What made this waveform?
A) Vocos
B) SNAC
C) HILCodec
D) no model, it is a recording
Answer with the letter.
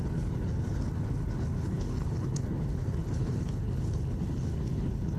C